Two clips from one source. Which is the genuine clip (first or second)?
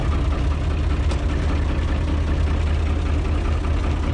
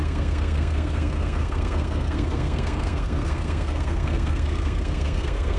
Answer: first